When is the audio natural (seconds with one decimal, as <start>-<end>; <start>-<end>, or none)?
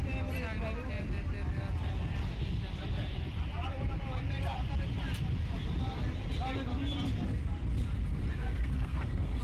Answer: 0.0-8.4